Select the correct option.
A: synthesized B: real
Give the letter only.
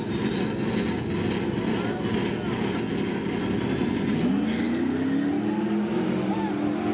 B